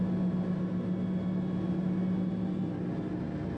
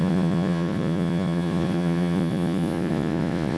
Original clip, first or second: first